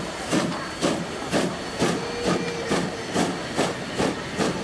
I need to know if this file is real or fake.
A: real